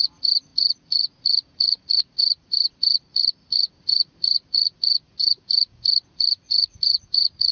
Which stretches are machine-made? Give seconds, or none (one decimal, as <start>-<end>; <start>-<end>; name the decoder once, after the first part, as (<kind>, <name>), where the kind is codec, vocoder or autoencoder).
0.0-7.5 (vocoder, Vocos)